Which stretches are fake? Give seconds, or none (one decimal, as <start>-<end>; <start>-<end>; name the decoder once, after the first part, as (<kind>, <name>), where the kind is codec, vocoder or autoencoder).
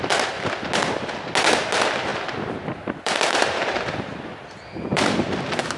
2.1-5.8 (vocoder, BigVGAN v2)